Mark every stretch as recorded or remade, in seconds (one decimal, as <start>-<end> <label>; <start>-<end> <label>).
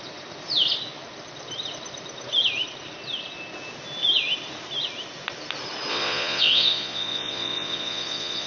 0.0-5.9 recorded; 5.9-8.5 remade